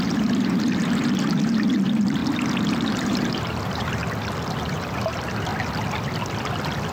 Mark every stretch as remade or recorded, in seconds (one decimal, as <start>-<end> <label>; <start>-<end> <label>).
0.0-2.2 remade; 2.2-2.7 recorded; 2.7-4.0 remade; 4.0-4.7 recorded; 4.7-5.5 remade; 5.5-6.9 recorded